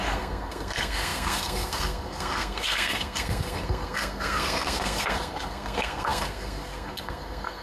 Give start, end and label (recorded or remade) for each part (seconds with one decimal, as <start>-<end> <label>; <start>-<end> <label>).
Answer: 0.0-7.6 remade